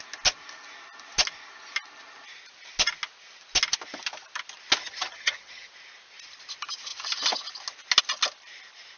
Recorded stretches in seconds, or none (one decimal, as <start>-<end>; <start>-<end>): 0.0-4.8; 5.7-9.0